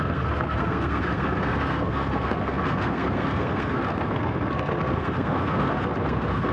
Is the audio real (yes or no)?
no